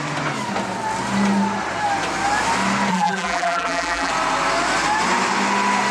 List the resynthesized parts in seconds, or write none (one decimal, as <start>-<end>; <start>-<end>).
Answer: 2.9-4.1